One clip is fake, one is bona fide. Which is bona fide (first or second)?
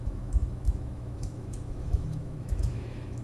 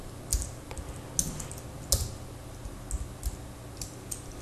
second